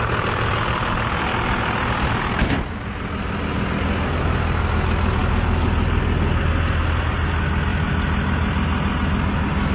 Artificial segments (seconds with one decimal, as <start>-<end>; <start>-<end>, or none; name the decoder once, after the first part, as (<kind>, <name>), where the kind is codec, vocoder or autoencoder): none